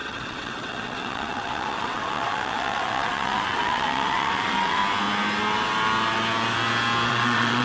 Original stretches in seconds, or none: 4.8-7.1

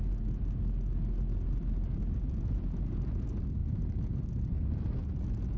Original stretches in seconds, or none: 0.0-5.6